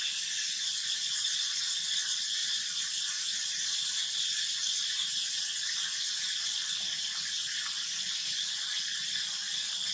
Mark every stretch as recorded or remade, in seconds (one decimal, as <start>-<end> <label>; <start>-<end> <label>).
0.0-9.9 recorded